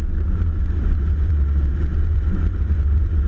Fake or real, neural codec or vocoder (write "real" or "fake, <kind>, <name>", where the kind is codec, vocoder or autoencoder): fake, vocoder, Vocos